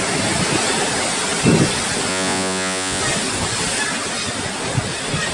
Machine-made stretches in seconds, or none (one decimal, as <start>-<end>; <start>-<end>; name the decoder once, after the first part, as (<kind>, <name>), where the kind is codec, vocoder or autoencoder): 2.1-3.0 (vocoder, Vocos)